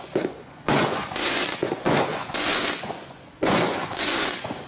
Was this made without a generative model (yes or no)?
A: no